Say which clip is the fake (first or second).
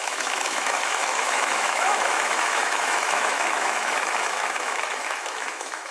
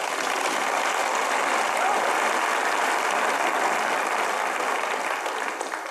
first